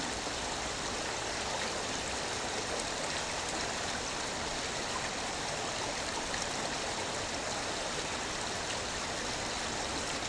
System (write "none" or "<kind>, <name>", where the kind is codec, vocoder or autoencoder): none